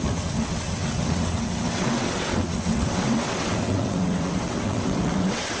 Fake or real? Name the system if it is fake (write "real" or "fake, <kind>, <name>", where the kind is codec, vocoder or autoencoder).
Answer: fake, vocoder, WaveNeXt